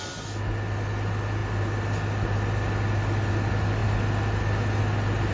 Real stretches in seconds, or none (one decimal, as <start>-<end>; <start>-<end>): 0.0-5.3